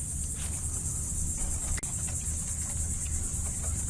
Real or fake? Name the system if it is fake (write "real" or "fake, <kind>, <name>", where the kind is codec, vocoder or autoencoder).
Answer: real